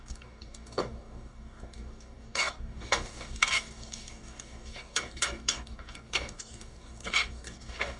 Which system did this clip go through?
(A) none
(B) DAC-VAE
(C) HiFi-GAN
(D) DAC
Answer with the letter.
D